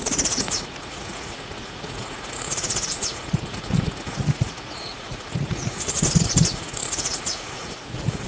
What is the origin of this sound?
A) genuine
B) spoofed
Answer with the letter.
B